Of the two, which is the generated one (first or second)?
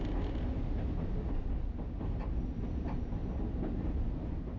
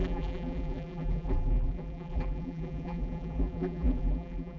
second